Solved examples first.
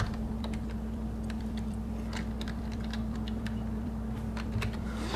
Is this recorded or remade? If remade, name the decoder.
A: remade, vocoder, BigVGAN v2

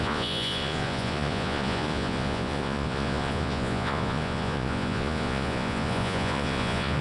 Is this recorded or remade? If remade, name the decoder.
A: remade, vocoder, Vocos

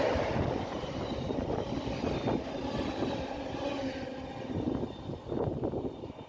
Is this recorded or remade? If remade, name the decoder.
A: recorded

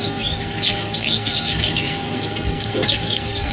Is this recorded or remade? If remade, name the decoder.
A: remade, codec, SNAC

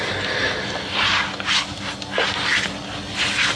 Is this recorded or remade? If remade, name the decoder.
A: recorded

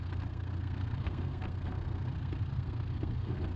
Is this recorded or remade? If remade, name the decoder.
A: remade, codec, SNAC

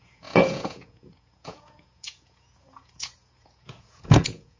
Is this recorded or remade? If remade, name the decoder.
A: remade, vocoder, Vocos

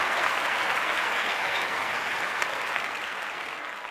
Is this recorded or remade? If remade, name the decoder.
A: remade, codec, SNAC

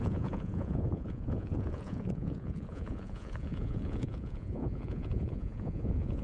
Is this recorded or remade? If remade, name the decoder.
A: remade, vocoder, Vocos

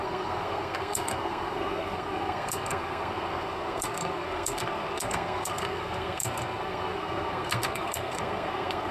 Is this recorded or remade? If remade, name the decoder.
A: remade, codec, SNAC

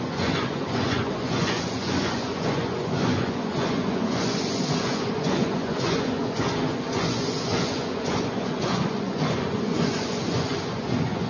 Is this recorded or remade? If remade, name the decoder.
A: remade, vocoder, Vocos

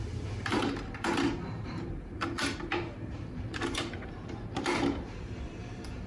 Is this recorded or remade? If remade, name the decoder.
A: remade, vocoder, BigVGAN v2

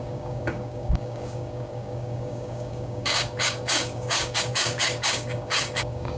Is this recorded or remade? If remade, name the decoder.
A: remade, codec, DAC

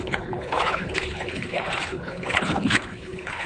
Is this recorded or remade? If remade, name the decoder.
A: remade, codec, HILCodec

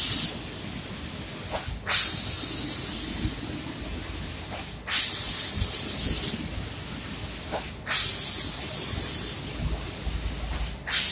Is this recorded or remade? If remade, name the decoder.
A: recorded